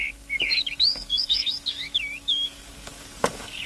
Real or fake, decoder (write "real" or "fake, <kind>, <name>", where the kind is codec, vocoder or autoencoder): fake, codec, DAC